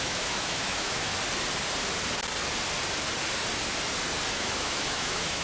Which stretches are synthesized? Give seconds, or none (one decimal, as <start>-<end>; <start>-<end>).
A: 0.0-1.1; 4.3-5.4